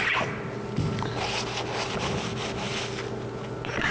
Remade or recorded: recorded